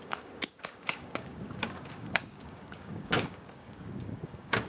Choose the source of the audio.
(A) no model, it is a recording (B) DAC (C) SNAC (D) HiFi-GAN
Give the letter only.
B